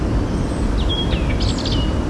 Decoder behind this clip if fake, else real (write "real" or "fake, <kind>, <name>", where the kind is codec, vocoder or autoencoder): real